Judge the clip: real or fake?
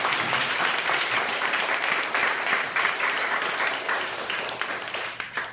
fake